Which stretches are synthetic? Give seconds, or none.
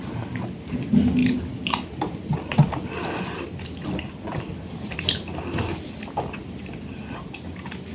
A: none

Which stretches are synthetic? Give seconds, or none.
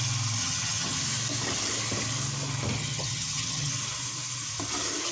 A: 0.4-1.0 (vocoder, HiFi-GAN); 2.8-3.7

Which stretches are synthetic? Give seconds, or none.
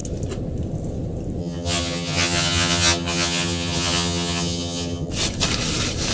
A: 1.4-5.1 (vocoder, HiFi-GAN)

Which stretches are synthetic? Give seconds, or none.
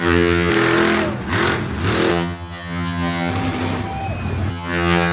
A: 0.0-0.5 (vocoder, HiFi-GAN); 2.1-3.3; 4.5-5.1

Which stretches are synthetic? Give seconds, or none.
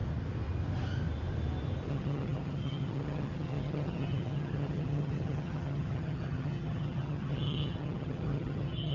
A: 1.9-8.9 (vocoder, HiFi-GAN)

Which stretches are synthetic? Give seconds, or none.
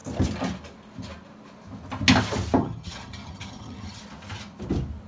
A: 2.6-4.0 (vocoder, HiFi-GAN)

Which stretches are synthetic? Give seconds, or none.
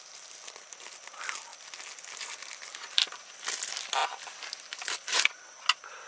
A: none